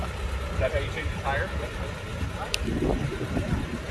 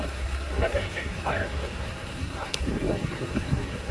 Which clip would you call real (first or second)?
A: first